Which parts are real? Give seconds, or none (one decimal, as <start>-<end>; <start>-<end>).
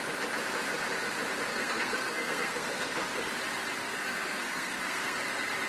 0.0-1.5; 3.3-3.8; 5.2-5.7